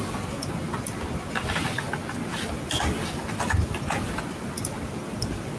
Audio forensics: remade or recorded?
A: recorded